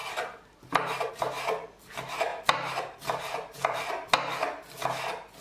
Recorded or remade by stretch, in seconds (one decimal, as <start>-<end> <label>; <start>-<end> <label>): 0.0-1.1 remade; 1.1-2.3 recorded; 2.3-3.9 remade; 3.9-5.4 recorded